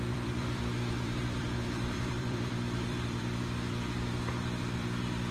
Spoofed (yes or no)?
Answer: yes